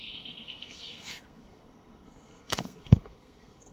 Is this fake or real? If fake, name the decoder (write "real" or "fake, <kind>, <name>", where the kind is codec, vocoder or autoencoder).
fake, codec, SNAC